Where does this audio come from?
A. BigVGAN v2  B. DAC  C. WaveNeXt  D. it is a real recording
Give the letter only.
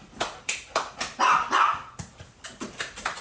D